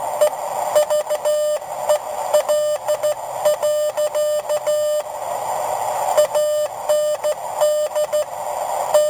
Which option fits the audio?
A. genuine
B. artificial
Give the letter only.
A